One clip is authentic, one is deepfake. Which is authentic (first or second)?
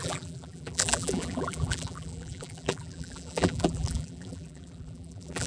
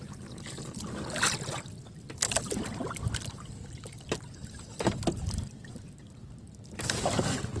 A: second